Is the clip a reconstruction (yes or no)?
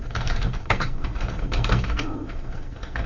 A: yes